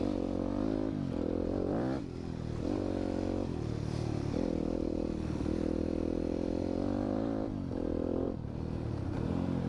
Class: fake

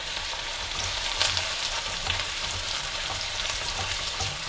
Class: fake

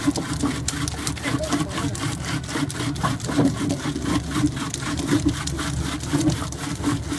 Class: real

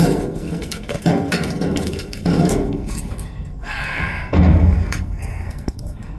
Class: fake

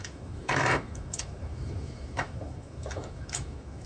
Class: fake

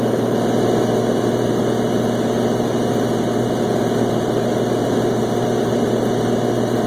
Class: real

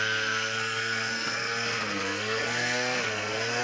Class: fake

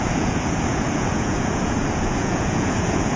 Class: fake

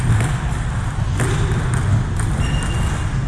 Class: real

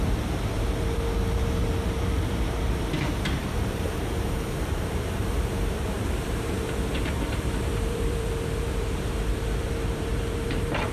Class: fake